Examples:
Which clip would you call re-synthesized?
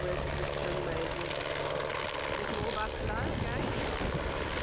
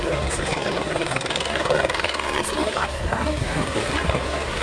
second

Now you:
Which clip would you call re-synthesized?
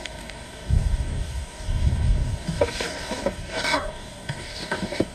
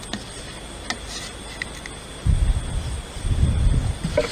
first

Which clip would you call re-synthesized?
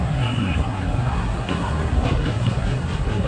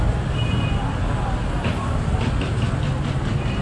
first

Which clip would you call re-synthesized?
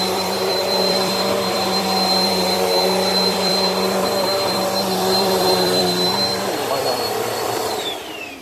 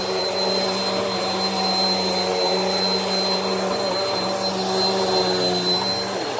first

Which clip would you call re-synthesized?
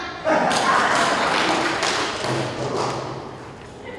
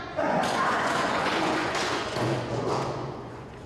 second